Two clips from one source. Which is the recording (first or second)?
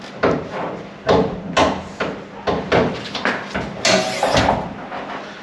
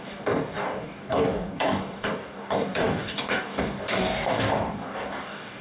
first